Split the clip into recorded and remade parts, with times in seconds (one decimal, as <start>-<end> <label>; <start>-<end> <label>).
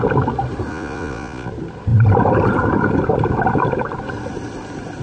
0.0-0.7 recorded; 0.7-1.5 remade; 1.5-5.0 recorded